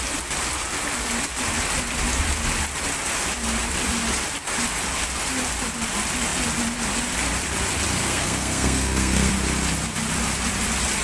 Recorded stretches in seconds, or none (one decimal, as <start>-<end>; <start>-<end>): 0.0-8.0; 9.3-11.0